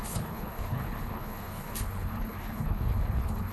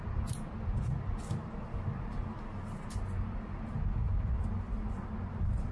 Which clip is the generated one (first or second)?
first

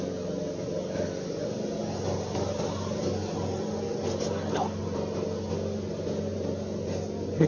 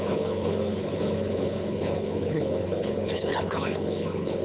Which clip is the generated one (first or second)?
second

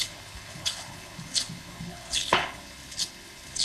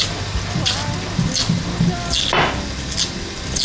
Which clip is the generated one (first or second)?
first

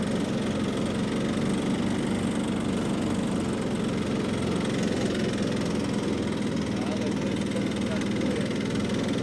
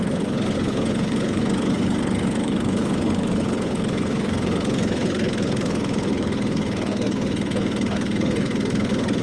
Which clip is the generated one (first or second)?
second